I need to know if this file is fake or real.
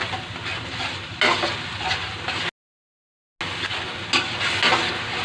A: real